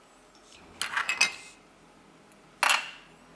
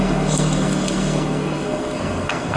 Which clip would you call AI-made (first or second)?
second